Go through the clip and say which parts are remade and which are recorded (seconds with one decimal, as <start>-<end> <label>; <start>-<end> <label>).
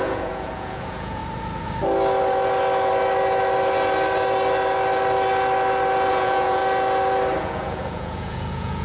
0.0-1.2 remade; 1.2-6.1 recorded; 6.1-6.6 remade; 6.6-7.4 recorded; 7.4-8.8 remade